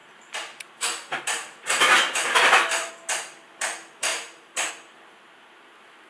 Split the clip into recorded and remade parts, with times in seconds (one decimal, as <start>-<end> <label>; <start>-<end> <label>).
0.0-2.9 remade; 2.9-4.1 recorded; 4.1-4.7 remade; 4.7-6.1 recorded